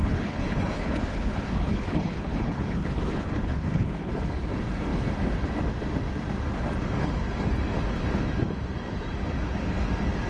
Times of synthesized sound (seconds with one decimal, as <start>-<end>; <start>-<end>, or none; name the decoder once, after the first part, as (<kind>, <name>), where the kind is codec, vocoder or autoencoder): 0.0-4.1 (codec, HILCodec)